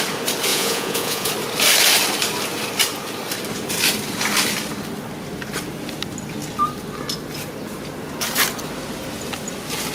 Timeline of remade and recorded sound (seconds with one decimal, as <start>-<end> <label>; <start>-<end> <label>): 0.0-0.5 recorded; 0.5-1.3 remade; 1.3-9.9 recorded